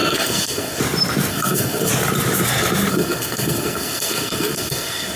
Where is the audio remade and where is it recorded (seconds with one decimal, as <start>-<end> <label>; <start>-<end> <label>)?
0.0-0.8 remade; 0.8-1.3 recorded; 1.3-1.9 remade; 1.9-2.9 recorded; 2.9-5.2 remade